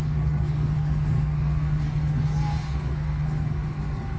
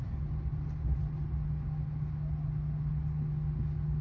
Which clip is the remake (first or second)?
first